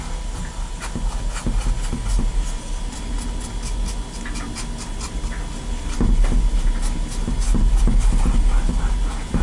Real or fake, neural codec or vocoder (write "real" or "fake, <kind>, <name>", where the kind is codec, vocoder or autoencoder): real